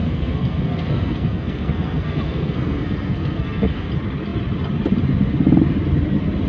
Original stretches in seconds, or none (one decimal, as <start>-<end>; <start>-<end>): 3.9-6.5